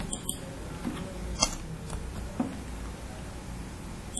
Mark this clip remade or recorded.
recorded